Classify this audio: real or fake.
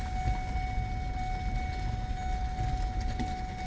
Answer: real